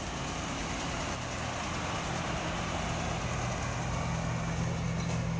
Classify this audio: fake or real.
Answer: real